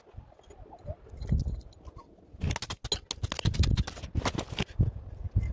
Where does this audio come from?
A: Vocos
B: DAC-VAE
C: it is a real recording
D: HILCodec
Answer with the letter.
C